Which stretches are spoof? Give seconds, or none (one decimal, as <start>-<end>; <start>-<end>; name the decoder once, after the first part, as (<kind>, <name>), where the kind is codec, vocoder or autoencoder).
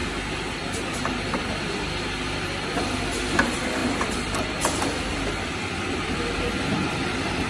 1.4-7.5 (vocoder, BigVGAN v2)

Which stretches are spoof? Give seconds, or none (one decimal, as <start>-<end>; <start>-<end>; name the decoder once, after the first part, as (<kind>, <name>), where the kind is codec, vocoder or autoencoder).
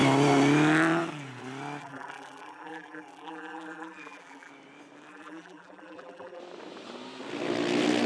1.8-4.5 (vocoder, BigVGAN v2); 5.1-6.4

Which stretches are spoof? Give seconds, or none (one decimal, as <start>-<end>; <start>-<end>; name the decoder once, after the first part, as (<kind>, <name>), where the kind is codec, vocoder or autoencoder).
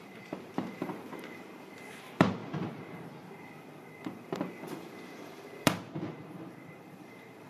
0.0-7.5 (vocoder, BigVGAN v2)